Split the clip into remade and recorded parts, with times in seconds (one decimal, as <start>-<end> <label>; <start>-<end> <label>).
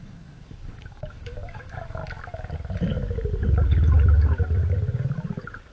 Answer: 0.0-2.0 remade; 2.0-5.7 recorded